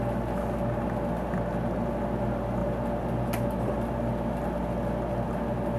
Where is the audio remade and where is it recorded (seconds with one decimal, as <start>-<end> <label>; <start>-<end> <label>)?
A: 0.0-5.8 recorded